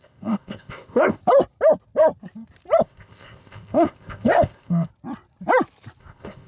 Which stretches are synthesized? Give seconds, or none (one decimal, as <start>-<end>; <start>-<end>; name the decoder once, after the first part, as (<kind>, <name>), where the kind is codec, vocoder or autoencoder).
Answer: 0.0-1.2 (codec, ZipCodec); 2.8-4.9; 6.0-6.5